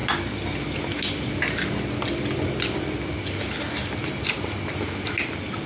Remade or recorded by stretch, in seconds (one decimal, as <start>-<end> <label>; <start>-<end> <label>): 0.0-5.7 recorded